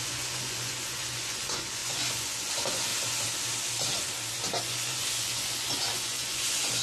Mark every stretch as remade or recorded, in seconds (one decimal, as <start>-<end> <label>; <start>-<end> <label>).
0.0-2.9 remade; 2.9-4.6 recorded; 4.6-6.8 remade